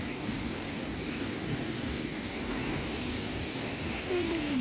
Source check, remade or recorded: remade